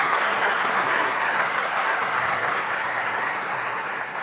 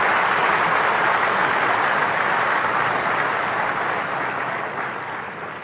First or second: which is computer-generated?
first